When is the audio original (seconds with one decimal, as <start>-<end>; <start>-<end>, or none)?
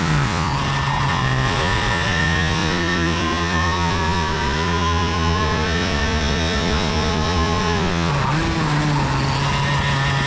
0.5-1.1; 8.1-10.3